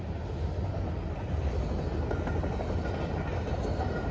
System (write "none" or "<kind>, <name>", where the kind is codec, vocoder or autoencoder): none